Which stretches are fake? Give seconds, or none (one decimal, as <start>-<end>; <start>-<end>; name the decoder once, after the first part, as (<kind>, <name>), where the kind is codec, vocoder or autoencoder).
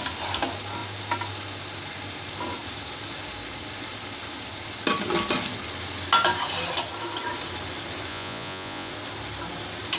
8.1-8.9 (vocoder, Vocos)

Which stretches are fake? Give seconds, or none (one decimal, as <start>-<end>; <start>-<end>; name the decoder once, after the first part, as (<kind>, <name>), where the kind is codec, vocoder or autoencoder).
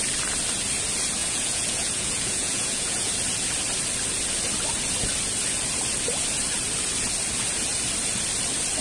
1.2-3.1 (vocoder, Vocos)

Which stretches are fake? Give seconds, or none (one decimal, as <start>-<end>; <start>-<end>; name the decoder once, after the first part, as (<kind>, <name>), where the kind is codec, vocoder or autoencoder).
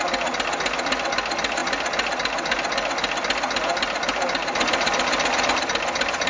none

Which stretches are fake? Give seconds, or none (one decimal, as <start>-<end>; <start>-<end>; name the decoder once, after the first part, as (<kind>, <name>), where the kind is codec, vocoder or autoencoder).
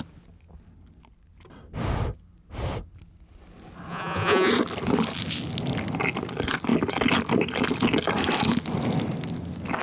3.9-4.5 (vocoder, Vocos)